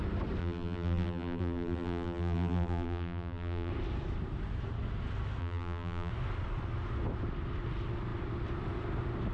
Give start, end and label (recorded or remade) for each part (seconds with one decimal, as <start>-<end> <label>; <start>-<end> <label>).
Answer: 0.0-0.4 recorded; 0.4-3.7 remade; 3.7-5.4 recorded; 5.4-6.1 remade; 6.1-9.3 recorded

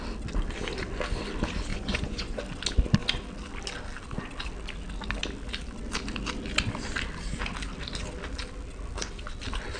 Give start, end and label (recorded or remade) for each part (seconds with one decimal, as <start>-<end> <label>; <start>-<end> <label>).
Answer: 0.0-1.7 recorded; 1.7-2.4 remade; 2.4-9.8 recorded